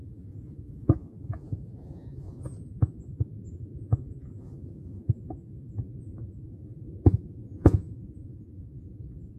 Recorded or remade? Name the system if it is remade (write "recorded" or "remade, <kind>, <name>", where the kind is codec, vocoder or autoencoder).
remade, vocoder, Vocos